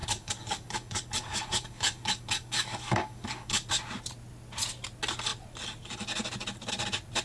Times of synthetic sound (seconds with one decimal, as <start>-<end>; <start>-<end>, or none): 0.0-3.7